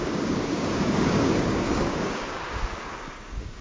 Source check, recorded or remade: remade